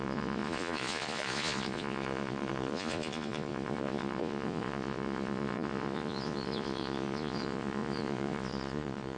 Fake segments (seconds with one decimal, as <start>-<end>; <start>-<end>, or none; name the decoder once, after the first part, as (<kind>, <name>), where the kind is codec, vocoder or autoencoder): 0.0-9.2 (vocoder, Vocos)